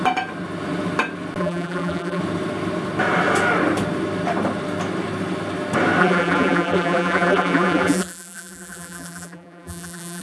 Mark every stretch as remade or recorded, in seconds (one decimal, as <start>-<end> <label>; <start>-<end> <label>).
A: 0.0-1.4 recorded; 1.4-2.2 remade; 2.2-6.0 recorded; 6.0-10.2 remade